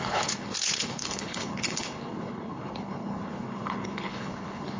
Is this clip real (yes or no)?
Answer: no